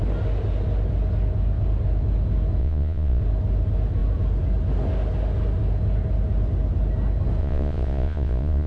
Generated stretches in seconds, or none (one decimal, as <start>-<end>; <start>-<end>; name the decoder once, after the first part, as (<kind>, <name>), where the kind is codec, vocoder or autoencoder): 2.6-3.2 (vocoder, Vocos); 7.4-8.7